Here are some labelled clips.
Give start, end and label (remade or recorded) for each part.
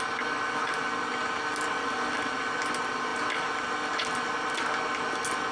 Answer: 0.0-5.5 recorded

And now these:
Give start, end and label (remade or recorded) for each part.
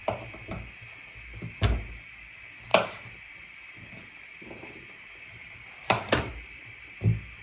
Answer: 0.0-0.5 remade; 0.5-2.7 recorded; 2.7-3.8 remade; 3.8-4.6 recorded; 4.6-6.6 remade; 6.6-7.4 recorded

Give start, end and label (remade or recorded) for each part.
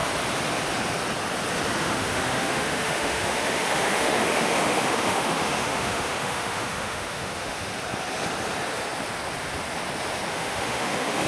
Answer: 0.0-1.8 recorded; 1.8-7.7 remade; 7.7-10.3 recorded; 10.3-11.3 remade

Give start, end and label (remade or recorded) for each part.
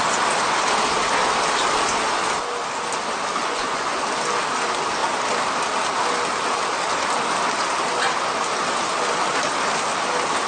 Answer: 0.0-3.4 recorded; 3.4-4.0 remade; 4.0-10.5 recorded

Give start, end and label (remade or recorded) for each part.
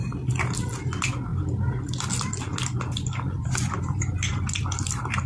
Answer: 0.0-5.3 recorded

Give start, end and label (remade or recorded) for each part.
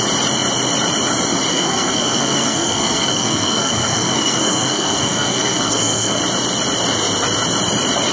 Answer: 0.0-1.5 recorded; 1.5-6.2 remade; 6.2-8.1 recorded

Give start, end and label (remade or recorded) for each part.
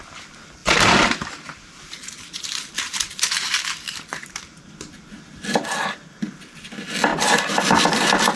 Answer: 0.0-0.6 recorded; 0.6-4.6 remade; 4.6-7.1 recorded; 7.1-7.6 remade; 7.6-8.4 recorded